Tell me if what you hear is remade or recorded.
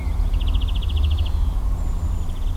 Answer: recorded